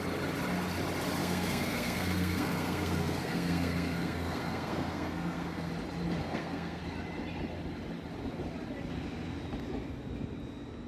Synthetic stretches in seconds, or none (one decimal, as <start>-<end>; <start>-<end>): 1.2-5.7; 6.2-6.8